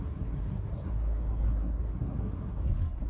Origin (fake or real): fake